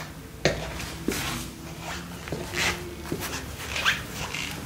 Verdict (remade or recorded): recorded